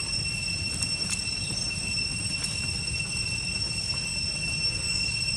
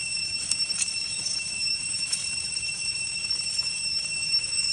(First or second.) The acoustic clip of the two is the first